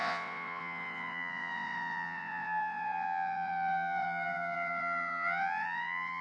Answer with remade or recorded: remade